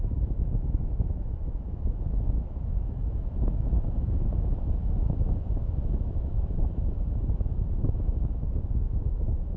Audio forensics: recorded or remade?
remade